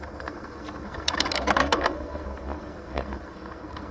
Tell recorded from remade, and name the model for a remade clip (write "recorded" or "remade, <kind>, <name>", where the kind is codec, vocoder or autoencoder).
remade, codec, SNAC